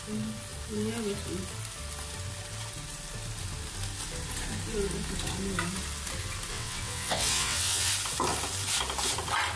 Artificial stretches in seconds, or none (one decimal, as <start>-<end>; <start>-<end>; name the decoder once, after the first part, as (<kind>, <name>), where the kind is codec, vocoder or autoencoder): 6.5-7.9 (vocoder, WaveNeXt)